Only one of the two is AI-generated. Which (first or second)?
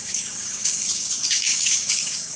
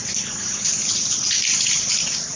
first